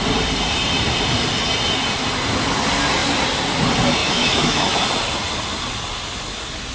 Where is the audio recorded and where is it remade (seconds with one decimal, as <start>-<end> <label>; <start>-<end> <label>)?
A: 0.0-4.0 recorded; 4.0-4.8 remade; 4.8-6.7 recorded